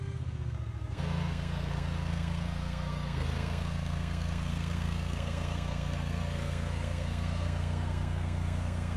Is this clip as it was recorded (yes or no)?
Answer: no